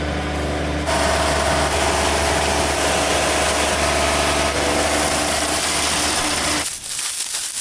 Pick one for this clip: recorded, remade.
recorded